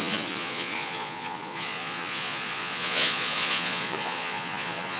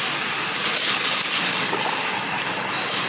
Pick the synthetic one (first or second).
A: first